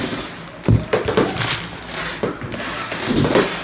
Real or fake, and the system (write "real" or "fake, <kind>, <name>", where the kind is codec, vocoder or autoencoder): real